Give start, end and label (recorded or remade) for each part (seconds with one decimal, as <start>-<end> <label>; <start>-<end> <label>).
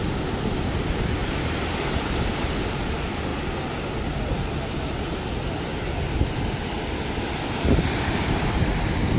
0.0-3.3 remade; 3.3-5.7 recorded; 5.7-9.2 remade